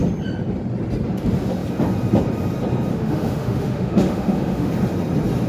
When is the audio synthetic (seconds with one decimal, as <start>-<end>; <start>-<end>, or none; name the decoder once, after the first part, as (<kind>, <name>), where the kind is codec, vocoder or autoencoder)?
2.9-4.7 (autoencoder, DAC-VAE)